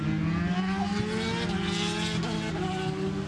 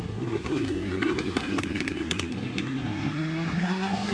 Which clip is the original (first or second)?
first